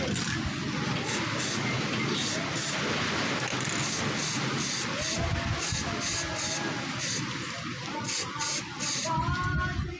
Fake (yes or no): no